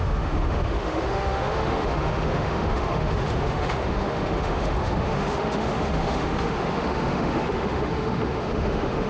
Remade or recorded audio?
remade